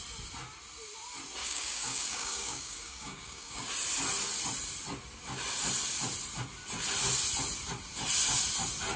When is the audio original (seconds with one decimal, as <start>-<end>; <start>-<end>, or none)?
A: 0.0-1.4; 3.7-9.0